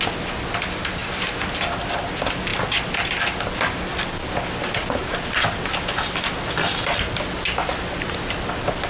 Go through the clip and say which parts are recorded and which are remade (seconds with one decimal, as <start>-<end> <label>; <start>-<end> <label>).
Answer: 0.0-8.9 recorded